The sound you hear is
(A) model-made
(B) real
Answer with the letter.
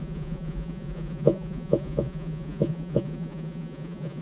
A